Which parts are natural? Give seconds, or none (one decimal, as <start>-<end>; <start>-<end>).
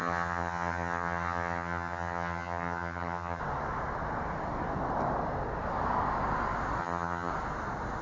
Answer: 3.4-6.8; 7.3-8.0